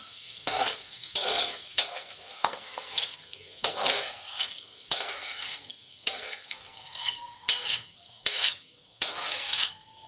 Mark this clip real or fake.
fake